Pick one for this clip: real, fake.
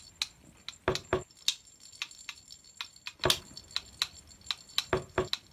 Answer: real